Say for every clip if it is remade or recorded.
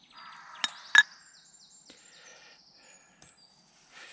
recorded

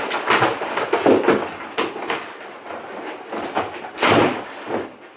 recorded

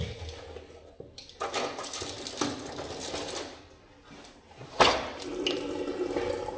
recorded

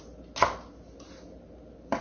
recorded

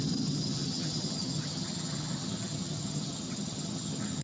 remade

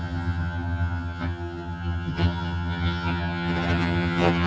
remade